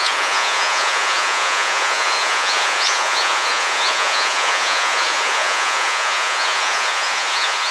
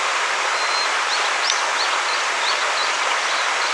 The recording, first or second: second